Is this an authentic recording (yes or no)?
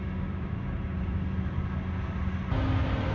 yes